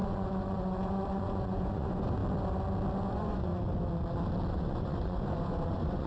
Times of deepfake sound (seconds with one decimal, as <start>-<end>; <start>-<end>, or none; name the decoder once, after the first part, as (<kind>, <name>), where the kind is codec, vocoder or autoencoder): 0.0-2.2 (vocoder, Vocos); 3.1-3.5; 4.5-6.1